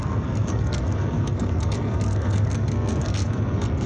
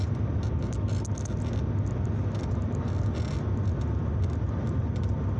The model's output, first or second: first